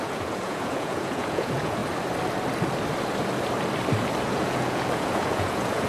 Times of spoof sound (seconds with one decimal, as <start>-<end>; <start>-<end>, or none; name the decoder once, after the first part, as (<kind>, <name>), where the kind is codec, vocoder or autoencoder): 0.0-1.8 (vocoder, Vocos); 4.2-5.9